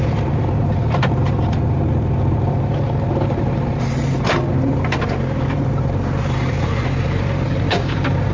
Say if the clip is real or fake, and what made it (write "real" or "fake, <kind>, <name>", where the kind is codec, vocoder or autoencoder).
fake, vocoder, BigVGAN v2